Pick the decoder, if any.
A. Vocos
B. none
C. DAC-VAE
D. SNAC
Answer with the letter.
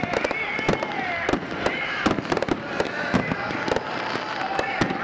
B